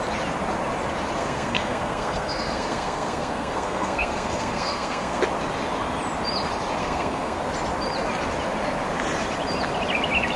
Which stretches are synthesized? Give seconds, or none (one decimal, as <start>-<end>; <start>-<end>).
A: 1.2-5.2; 6.8-7.4